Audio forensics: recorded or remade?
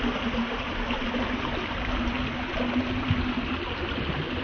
recorded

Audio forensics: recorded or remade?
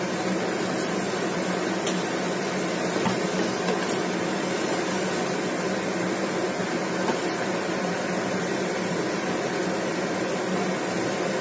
recorded